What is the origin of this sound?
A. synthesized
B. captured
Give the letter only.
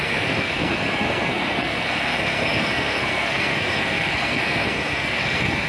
A